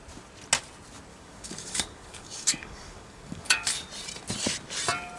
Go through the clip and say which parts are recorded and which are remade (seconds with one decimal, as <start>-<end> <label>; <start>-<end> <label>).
0.0-1.1 recorded; 1.1-3.9 remade; 3.9-5.2 recorded